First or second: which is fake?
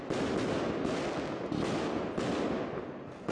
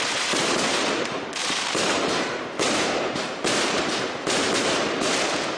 second